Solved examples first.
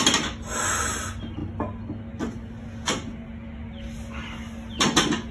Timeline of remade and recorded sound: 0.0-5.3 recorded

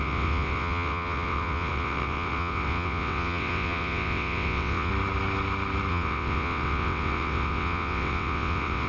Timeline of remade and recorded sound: 0.0-4.9 remade; 4.9-5.9 recorded; 5.9-8.9 remade